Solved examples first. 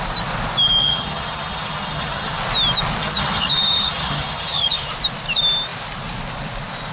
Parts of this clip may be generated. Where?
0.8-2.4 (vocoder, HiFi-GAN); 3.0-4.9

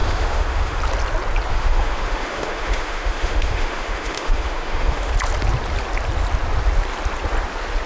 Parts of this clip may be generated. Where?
0.0-0.8 (autoencoder, DAC-VAE); 1.5-5.1